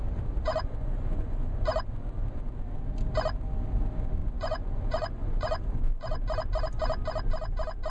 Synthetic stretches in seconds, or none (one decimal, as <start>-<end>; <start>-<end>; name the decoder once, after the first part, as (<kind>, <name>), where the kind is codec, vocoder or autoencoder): 0.4-2.5 (vocoder, Vocos); 4.2-6.2